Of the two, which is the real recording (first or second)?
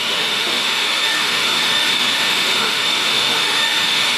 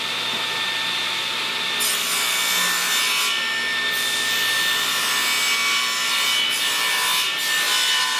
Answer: second